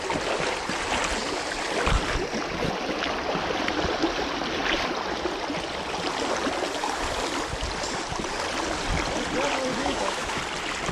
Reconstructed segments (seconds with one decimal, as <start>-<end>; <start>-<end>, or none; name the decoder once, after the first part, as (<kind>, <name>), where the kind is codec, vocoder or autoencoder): 9.7-10.4 (autoencoder, DAC-VAE)